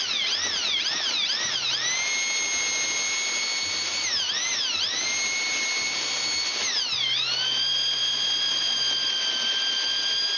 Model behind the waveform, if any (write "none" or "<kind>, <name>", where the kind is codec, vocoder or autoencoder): none